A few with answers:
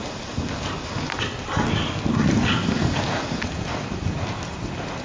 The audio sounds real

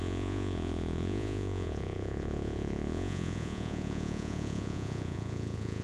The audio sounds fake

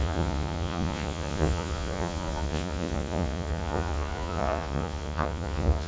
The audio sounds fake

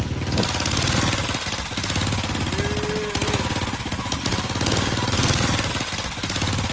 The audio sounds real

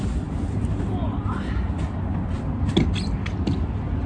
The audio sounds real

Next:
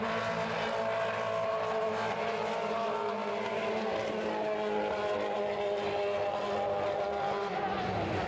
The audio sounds real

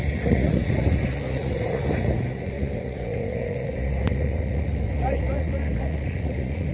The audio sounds fake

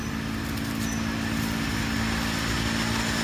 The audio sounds real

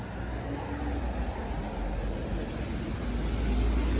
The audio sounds real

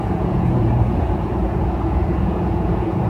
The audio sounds fake